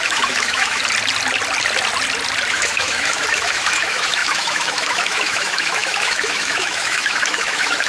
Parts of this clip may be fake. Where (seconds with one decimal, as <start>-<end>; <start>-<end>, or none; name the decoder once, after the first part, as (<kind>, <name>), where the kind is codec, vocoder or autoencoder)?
0.0-0.8 (autoencoder, DAC-VAE); 2.5-7.9

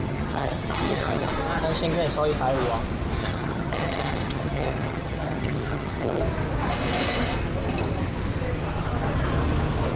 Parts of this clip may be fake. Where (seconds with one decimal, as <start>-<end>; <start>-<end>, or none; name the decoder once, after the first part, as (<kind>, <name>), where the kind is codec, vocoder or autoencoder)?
0.0-1.3 (vocoder, HiFi-GAN); 3.2-6.2

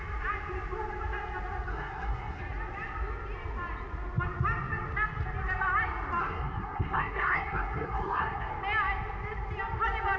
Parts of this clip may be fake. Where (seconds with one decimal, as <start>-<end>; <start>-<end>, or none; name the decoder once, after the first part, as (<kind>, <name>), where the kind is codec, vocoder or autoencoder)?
1.7-2.4 (codec, SNAC); 6.2-8.5

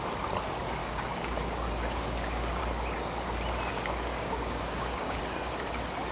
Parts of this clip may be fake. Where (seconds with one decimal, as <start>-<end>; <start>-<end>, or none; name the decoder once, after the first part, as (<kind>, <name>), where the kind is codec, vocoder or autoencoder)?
0.8-2.6 (codec, DAC); 3.7-5.2

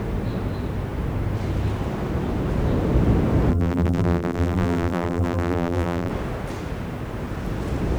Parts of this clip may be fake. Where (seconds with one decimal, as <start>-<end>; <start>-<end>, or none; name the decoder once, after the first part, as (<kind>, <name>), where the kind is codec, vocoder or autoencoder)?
3.5-6.1 (vocoder, BigVGAN v2)

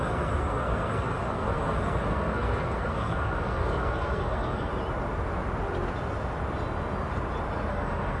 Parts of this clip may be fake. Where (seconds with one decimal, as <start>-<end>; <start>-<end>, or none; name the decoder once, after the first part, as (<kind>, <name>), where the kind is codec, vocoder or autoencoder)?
0.0-4.7 (codec, SNAC); 7.7-8.2

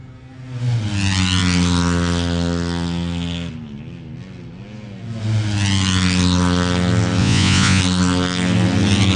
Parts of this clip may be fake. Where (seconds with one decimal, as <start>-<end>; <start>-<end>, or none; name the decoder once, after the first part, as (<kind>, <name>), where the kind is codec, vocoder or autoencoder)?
7.2-7.8 (vocoder, Vocos)